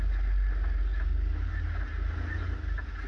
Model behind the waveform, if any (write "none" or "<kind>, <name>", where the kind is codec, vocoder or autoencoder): none